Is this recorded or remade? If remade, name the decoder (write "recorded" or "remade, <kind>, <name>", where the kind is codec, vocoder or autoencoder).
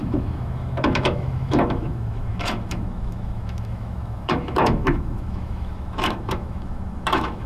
remade, autoencoder, DAC-VAE